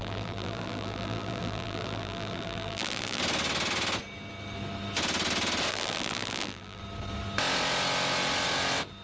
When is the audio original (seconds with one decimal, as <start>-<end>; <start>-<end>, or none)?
3.2-5.7; 6.8-9.0